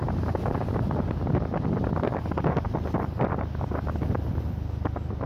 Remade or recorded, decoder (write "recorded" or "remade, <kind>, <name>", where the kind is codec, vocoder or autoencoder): recorded